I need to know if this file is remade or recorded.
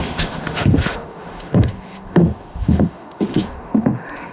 remade